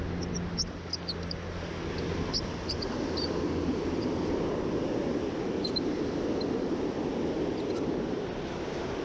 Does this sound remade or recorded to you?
recorded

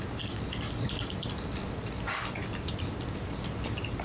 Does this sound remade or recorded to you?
recorded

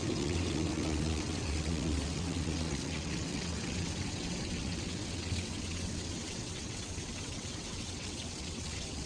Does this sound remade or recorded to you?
remade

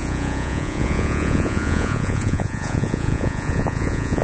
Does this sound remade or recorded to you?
remade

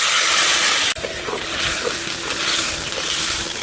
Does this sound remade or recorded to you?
recorded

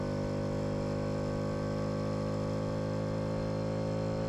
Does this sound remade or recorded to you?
recorded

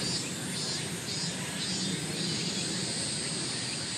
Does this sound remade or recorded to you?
recorded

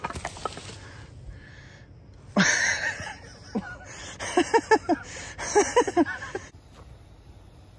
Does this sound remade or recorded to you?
recorded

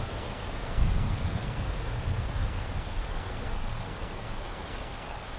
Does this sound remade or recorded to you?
remade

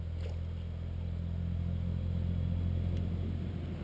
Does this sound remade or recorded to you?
recorded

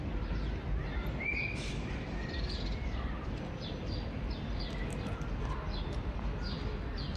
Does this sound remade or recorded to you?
recorded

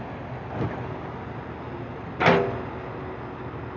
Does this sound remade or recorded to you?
recorded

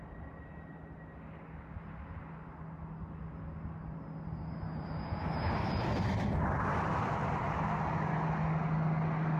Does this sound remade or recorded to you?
recorded